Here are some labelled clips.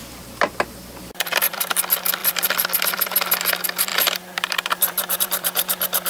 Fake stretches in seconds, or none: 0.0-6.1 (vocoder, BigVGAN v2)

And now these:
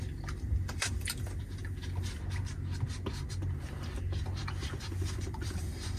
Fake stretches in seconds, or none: 0.0-1.6 (vocoder, BigVGAN v2); 5.2-6.0